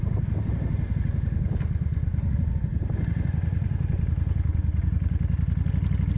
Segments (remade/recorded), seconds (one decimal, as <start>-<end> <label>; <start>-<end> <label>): 0.0-6.2 recorded